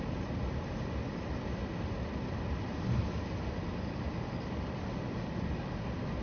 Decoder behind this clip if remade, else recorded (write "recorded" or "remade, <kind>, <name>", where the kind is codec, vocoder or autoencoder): recorded